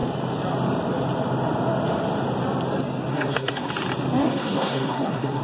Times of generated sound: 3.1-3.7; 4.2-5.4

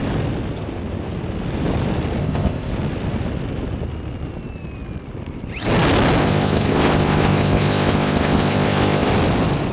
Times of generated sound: 2.2-2.7; 6.2-9.1

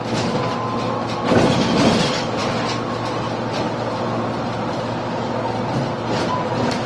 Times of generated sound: none

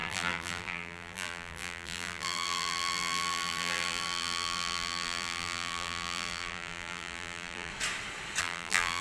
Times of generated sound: 0.0-7.7; 8.4-9.0

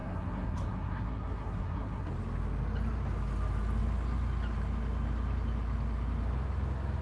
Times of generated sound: 0.0-2.1

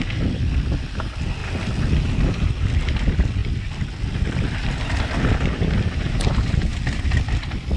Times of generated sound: 1.4-2.5; 6.7-7.8